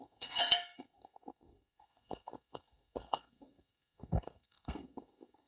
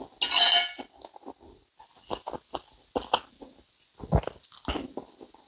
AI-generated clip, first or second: first